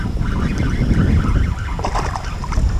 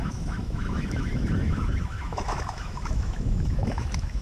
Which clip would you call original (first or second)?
first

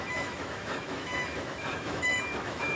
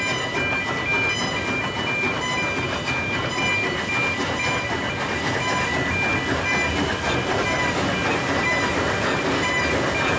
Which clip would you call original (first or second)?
second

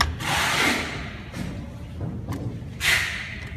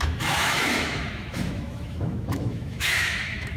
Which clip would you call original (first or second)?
first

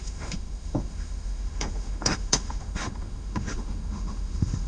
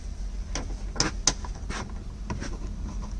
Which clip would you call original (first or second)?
second